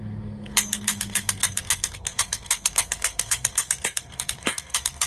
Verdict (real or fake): fake